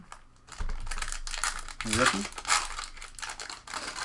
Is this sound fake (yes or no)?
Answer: no